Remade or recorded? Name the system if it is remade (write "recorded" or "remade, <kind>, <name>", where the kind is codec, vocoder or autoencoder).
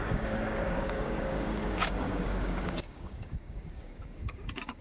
remade, codec, DAC